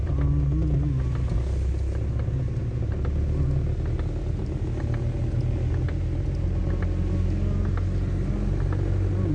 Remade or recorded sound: recorded